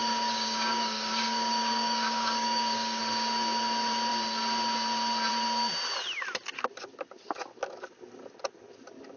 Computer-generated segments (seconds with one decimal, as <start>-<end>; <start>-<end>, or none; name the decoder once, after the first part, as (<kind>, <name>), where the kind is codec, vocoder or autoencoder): 0.0-3.0 (codec, DAC)